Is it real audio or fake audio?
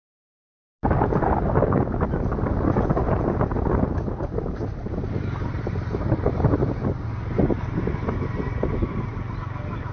real